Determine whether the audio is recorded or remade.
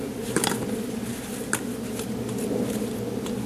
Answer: recorded